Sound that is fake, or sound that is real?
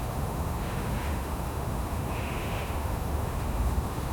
fake